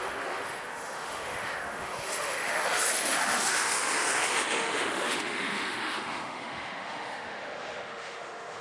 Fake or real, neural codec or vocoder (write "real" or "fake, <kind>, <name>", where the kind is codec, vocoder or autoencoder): fake, autoencoder, DAC-VAE